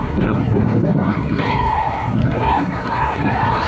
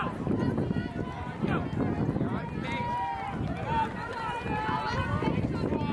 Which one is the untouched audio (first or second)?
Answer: second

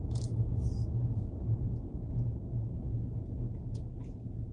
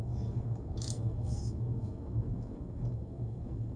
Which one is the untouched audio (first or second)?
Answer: first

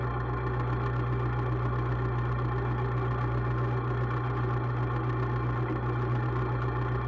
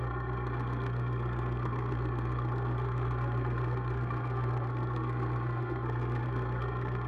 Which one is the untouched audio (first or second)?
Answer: first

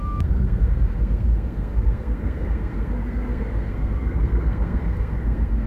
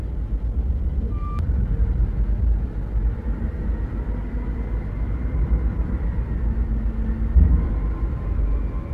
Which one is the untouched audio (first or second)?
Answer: second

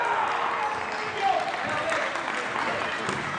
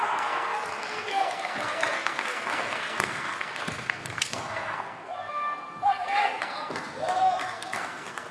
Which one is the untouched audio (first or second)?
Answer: first